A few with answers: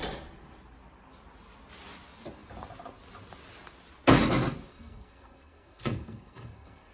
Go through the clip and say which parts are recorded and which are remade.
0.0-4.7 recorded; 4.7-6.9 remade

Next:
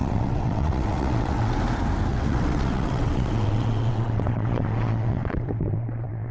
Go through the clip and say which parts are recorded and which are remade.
0.0-1.6 remade; 1.6-2.1 recorded; 2.1-6.3 remade

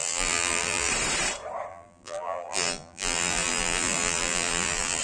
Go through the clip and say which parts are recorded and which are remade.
0.0-0.9 remade; 0.9-1.7 recorded; 1.7-5.0 remade